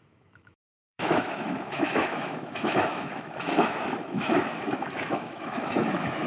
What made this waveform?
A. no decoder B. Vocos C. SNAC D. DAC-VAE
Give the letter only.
D